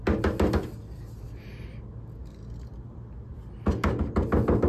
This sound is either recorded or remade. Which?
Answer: recorded